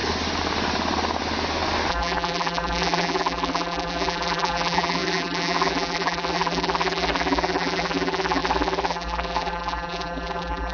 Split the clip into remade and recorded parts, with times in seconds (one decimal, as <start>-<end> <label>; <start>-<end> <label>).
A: 0.0-1.9 recorded; 1.9-10.7 remade